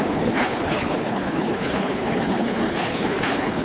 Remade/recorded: remade